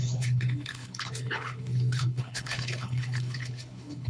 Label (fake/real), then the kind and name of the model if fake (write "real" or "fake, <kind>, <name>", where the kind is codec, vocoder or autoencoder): fake, codec, HILCodec